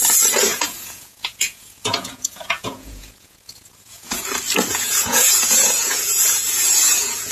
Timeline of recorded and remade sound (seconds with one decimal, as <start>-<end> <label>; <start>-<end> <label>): 0.0-0.5 recorded; 0.5-4.2 remade; 4.2-4.7 recorded; 4.7-7.3 remade